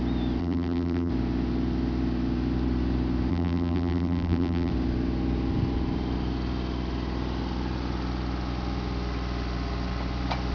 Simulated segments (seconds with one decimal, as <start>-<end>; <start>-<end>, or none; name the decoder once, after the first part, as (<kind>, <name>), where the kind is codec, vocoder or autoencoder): 0.4-1.1 (vocoder, BigVGAN v2); 3.3-4.7